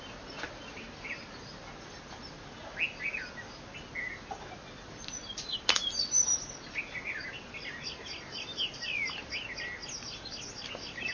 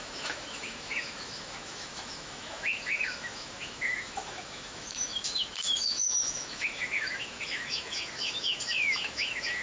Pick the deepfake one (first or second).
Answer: second